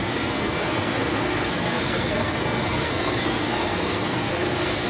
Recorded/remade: remade